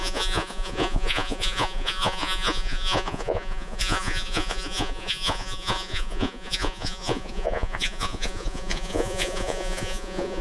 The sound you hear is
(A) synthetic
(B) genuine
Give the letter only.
A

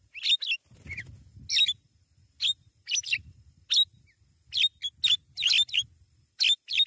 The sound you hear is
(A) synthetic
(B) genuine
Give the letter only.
B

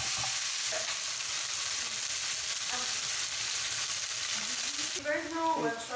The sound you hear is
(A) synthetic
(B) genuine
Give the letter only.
B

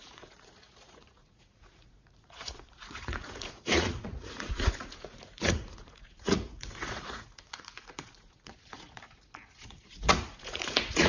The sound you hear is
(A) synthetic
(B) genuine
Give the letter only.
A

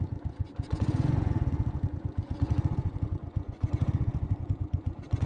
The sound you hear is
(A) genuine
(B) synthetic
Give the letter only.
B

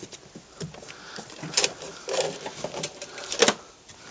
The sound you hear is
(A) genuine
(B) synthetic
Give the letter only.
A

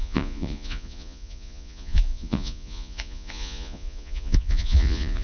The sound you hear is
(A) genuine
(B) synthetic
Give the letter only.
B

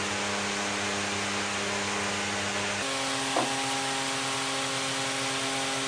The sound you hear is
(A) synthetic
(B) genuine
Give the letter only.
B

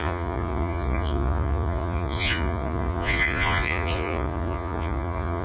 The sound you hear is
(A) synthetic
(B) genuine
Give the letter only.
A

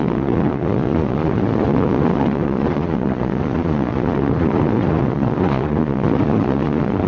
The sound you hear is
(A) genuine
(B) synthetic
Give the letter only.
B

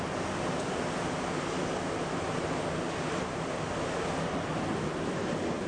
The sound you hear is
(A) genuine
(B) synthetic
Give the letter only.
A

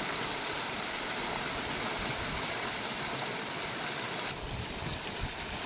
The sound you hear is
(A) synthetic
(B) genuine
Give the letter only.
B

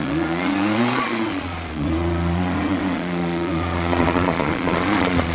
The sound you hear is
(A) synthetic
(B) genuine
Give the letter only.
A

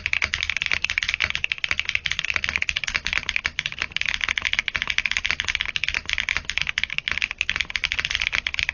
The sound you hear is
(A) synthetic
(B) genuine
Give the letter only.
B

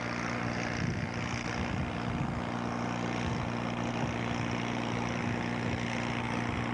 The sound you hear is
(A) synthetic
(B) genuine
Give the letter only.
B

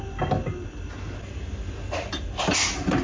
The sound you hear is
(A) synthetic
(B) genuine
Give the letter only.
B